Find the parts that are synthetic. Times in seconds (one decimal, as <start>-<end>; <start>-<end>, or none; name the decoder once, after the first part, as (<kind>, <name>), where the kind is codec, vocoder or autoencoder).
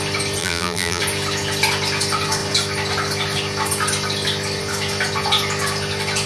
0.4-1.0 (vocoder, BigVGAN v2)